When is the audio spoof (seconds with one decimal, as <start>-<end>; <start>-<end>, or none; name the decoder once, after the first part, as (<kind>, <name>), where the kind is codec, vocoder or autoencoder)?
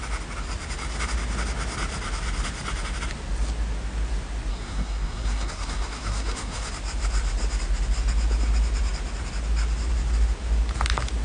4.5-6.7 (codec, SNAC)